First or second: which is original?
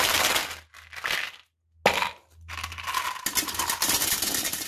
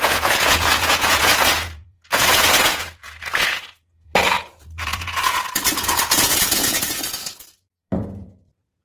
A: first